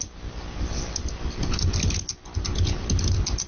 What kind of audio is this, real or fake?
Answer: real